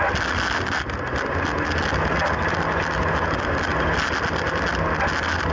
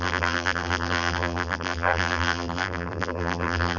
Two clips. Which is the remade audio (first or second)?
second